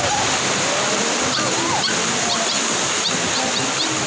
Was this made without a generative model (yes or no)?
yes